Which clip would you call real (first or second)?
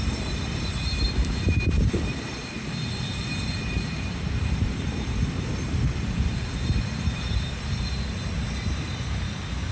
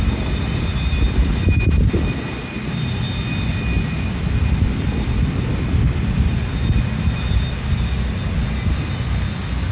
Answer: second